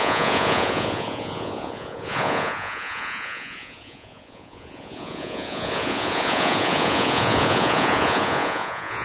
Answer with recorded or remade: remade